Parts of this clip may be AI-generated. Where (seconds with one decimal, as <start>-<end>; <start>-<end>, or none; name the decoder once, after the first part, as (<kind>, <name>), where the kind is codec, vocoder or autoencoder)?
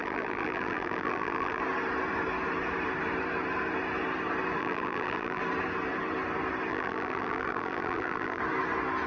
0.0-1.6 (vocoder, BigVGAN v2); 4.6-5.4; 6.7-8.4